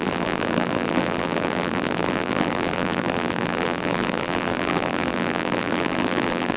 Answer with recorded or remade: remade